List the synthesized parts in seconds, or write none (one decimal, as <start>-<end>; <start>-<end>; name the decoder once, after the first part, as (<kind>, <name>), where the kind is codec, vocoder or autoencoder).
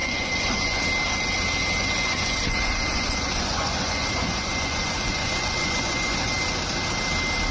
0.0-0.8 (vocoder, Vocos); 1.8-6.3